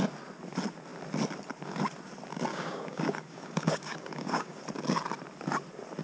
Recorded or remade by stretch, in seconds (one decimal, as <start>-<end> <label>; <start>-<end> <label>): 0.0-2.5 recorded; 2.5-4.6 remade; 4.6-6.0 recorded